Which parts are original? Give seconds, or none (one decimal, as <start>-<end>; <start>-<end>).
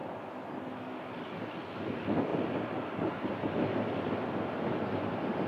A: 0.0-5.5